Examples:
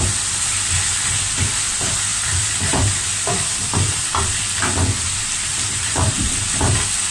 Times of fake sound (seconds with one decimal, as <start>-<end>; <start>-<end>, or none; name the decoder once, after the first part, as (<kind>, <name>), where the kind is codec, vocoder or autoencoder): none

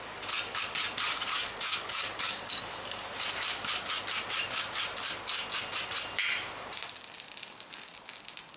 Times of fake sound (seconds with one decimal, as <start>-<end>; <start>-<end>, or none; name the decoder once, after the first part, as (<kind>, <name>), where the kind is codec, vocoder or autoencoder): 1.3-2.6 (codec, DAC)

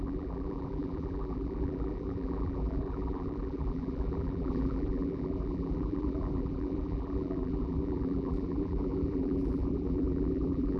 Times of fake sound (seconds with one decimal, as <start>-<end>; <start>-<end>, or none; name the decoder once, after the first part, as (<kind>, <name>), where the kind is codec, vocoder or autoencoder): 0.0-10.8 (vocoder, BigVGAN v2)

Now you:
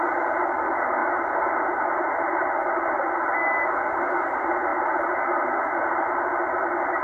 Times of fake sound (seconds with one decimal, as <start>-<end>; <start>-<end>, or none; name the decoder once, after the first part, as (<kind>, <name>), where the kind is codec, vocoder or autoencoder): none

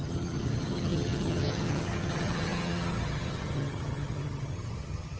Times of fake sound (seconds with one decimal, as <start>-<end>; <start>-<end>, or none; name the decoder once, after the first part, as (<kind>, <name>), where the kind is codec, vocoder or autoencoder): 0.0-5.2 (vocoder, HiFi-GAN)